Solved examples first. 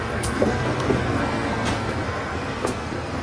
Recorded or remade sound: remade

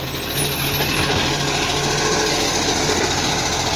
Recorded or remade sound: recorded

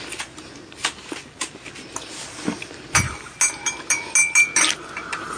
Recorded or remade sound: recorded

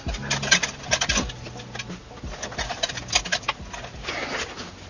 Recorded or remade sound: recorded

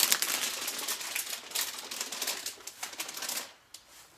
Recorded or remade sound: recorded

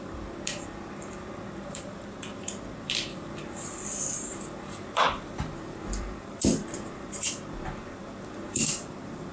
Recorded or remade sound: remade